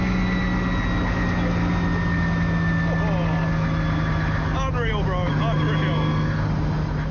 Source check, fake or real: real